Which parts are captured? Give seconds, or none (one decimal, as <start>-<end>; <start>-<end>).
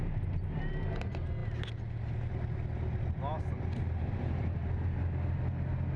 0.0-6.0